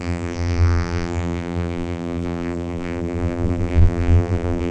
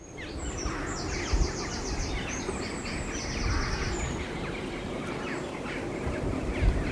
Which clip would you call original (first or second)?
second